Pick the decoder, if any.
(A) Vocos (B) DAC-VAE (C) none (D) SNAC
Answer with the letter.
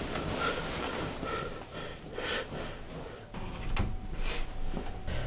C